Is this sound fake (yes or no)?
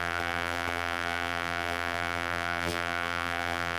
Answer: yes